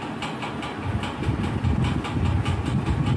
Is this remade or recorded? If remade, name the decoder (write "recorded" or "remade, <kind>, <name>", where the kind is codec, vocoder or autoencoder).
recorded